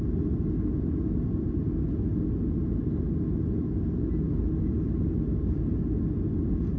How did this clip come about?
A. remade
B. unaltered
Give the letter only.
B